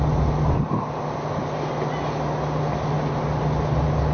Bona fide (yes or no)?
yes